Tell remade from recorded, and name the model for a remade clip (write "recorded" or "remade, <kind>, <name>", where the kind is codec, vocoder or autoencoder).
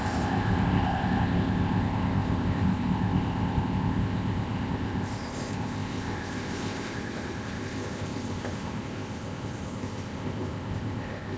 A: remade, codec, ZipCodec